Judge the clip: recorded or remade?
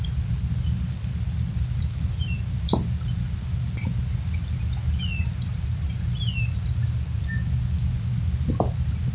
recorded